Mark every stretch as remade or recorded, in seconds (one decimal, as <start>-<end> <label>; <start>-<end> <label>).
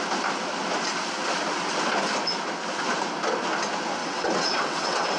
0.0-4.0 recorded; 4.0-5.2 remade